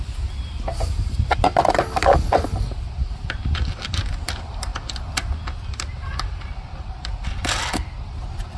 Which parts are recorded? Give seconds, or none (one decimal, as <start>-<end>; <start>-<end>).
0.0-8.6

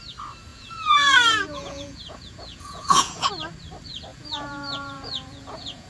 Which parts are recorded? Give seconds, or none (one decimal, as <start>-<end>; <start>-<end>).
0.0-0.5; 3.3-4.1

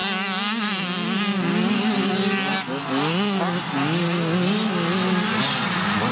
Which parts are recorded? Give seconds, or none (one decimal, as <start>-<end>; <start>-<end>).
0.0-6.1

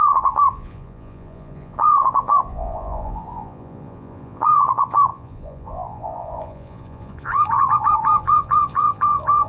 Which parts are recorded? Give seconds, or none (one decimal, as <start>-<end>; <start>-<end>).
none

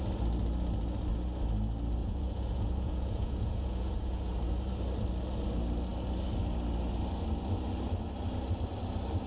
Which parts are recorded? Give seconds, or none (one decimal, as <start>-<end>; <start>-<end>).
0.0-2.0; 4.3-9.3